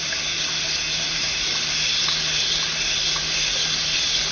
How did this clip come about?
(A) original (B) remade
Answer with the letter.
A